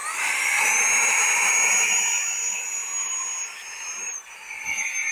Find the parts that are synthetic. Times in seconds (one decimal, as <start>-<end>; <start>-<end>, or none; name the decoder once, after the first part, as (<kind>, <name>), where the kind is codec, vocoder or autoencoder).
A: none